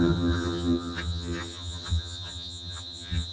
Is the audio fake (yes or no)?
yes